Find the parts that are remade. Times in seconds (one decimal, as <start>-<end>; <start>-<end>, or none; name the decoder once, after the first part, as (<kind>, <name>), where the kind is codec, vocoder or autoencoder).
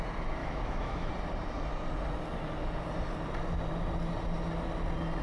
0.4-1.1 (autoencoder, DAC-VAE)